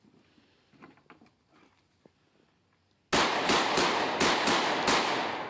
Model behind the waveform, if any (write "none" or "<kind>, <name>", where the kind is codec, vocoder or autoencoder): none